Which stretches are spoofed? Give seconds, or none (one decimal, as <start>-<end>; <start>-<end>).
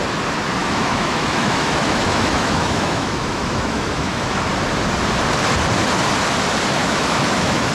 0.6-4.4; 6.8-7.7